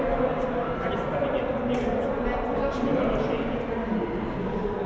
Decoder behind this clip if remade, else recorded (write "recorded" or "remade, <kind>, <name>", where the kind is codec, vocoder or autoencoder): recorded